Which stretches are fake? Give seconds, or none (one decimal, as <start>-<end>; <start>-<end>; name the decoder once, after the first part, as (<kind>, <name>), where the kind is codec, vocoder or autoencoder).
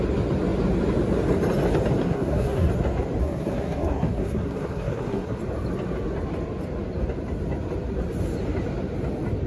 2.0-2.7 (codec, SNAC); 3.2-5.4